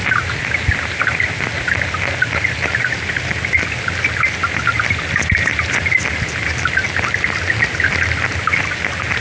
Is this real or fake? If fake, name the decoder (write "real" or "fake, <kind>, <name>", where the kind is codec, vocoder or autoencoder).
real